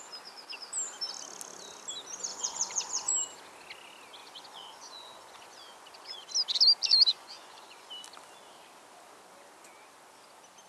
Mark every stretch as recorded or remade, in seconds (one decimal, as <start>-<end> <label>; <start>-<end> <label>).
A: 0.0-2.3 recorded; 2.3-3.1 remade; 3.1-4.2 recorded; 4.2-6.3 remade; 6.3-7.1 recorded; 7.1-7.9 remade; 7.9-10.7 recorded